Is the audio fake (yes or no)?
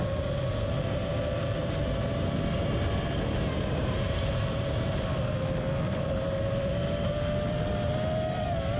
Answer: no